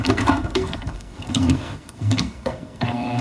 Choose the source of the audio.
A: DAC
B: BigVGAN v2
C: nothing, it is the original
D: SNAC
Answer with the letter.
D